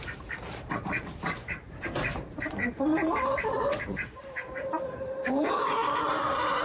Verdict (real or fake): fake